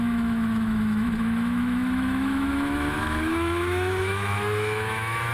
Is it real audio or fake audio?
fake